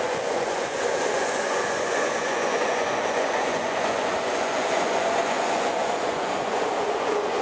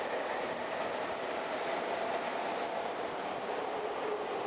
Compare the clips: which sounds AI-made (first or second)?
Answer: first